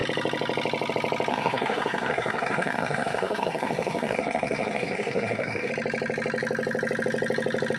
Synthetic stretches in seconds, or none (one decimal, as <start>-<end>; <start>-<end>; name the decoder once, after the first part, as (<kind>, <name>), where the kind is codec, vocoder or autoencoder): 1.3-5.7 (codec, SNAC)